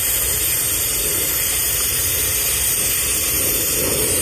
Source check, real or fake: real